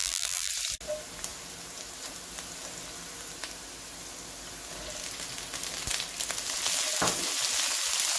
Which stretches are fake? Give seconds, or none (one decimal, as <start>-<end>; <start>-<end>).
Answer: 0.0-0.5